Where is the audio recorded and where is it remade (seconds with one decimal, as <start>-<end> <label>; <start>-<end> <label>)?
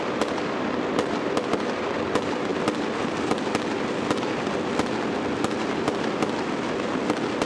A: 0.0-7.5 recorded